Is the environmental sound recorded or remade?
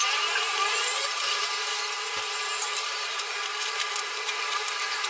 remade